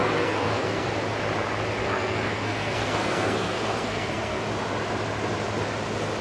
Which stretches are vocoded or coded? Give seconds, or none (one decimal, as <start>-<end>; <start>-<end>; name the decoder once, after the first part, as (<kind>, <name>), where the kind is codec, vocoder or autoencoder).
0.0-0.9 (codec, SNAC); 1.8-4.4